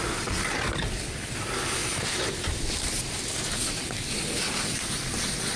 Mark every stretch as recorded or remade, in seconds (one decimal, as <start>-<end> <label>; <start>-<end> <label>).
0.0-5.6 recorded

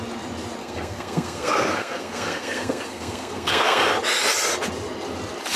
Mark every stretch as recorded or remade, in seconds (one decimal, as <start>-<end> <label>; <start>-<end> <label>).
0.0-0.6 recorded; 0.6-3.8 remade; 3.8-5.6 recorded

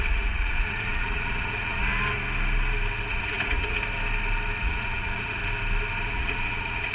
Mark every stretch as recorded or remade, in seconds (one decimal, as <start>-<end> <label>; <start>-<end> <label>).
0.0-1.9 remade; 1.9-3.1 recorded; 3.1-3.8 remade; 3.8-4.6 recorded; 4.6-5.4 remade; 5.4-6.1 recorded; 6.1-6.9 remade

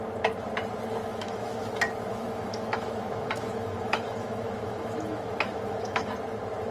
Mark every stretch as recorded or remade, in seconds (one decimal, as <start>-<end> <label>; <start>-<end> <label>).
0.0-1.1 recorded; 1.1-1.7 remade; 1.7-2.1 recorded; 2.1-6.1 remade; 6.1-6.7 recorded